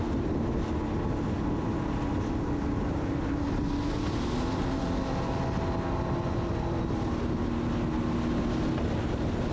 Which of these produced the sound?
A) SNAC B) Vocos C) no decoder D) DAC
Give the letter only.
C